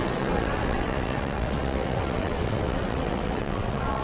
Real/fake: fake